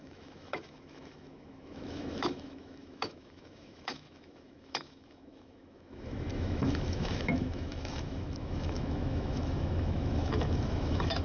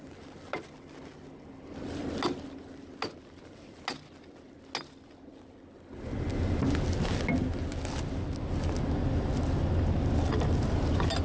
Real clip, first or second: second